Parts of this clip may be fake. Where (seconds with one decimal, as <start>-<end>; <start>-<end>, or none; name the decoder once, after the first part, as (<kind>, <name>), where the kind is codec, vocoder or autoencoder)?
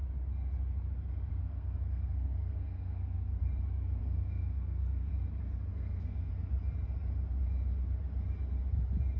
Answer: 1.3-3.4 (codec, SNAC); 4.0-5.1; 5.7-6.3